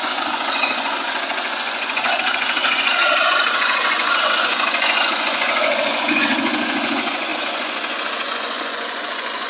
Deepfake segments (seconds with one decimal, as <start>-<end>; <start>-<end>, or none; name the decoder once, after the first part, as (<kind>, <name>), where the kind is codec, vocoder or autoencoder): 0.0-9.5 (vocoder, Vocos)